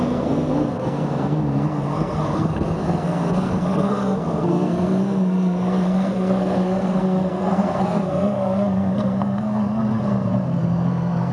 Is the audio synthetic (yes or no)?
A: yes